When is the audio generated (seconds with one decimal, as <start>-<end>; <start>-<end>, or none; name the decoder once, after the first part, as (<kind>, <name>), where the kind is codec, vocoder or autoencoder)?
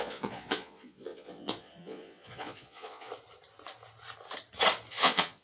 0.0-3.1 (vocoder, Vocos); 4.9-5.4